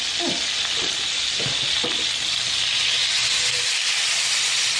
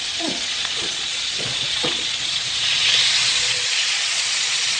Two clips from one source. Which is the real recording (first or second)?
first